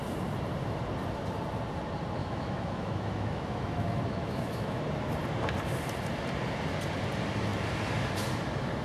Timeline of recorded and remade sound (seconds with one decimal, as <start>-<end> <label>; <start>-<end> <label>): 0.0-2.2 recorded; 2.2-4.8 remade; 4.8-8.8 recorded